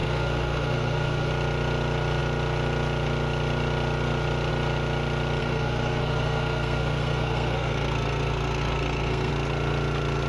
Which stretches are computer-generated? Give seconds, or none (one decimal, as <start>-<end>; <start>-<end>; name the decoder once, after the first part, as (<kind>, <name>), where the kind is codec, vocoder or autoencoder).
0.0-1.3 (codec, SNAC); 5.4-9.3